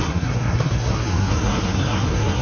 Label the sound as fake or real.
fake